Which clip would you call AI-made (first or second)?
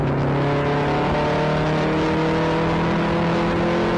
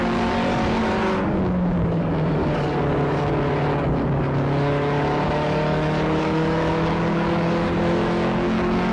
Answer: second